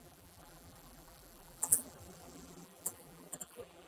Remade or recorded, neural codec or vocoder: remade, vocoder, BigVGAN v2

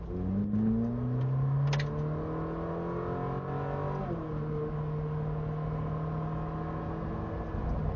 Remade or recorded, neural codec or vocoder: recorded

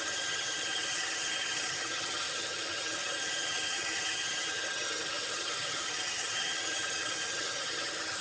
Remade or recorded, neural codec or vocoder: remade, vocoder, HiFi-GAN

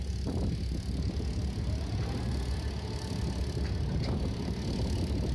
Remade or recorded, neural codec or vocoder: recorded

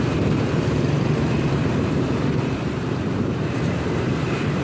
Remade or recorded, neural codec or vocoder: remade, vocoder, BigVGAN v2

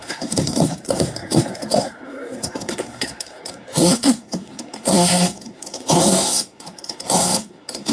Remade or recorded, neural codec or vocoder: remade, codec, SNAC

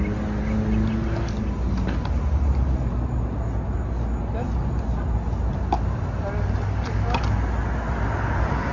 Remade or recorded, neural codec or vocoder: recorded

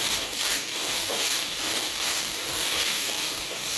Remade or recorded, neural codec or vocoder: remade, codec, DAC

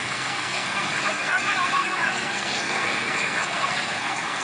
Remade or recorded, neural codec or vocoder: remade, codec, SNAC